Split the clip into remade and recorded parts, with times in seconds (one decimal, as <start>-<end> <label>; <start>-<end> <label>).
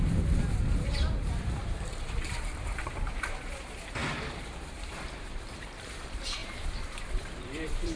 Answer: 0.0-8.0 remade